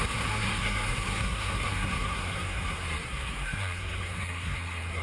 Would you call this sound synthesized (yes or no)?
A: yes